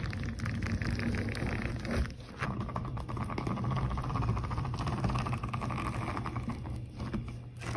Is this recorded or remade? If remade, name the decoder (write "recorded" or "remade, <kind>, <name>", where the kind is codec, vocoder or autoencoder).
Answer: recorded